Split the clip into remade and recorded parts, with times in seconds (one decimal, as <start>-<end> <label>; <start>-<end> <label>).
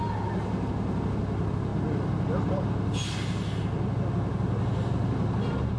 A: 0.0-5.8 recorded